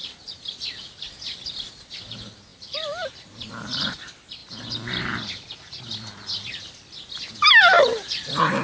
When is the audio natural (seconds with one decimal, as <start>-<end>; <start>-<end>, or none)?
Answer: 0.0-2.5; 4.0-4.4; 5.8-8.6